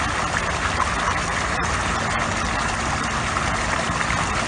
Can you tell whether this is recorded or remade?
recorded